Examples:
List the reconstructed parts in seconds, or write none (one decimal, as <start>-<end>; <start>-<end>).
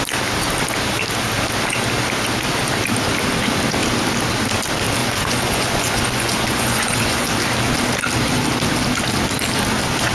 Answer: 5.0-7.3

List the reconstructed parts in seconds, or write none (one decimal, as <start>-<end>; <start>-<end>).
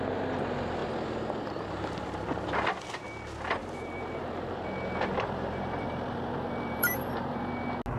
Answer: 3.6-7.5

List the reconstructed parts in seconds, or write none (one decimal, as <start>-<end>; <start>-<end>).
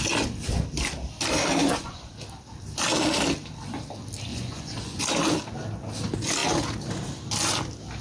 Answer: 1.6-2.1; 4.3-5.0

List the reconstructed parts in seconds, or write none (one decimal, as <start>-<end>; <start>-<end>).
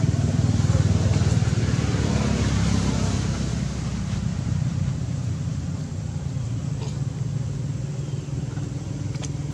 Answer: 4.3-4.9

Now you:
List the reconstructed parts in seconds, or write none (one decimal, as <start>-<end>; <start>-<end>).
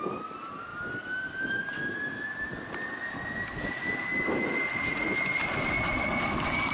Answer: none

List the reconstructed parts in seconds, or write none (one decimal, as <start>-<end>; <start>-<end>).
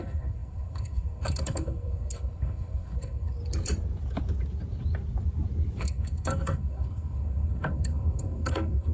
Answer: 0.0-3.4; 5.8-8.9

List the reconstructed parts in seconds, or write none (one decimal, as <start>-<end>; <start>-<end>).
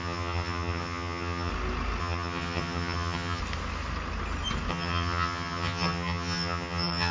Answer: 0.0-1.5; 2.0-3.4; 4.7-7.1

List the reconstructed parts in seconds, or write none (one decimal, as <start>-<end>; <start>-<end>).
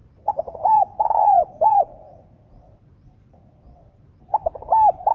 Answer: 0.0-2.8